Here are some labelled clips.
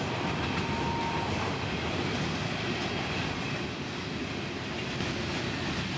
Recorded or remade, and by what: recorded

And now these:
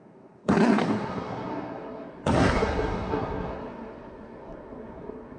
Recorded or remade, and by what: remade, codec, SNAC